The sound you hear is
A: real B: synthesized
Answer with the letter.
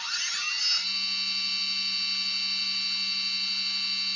A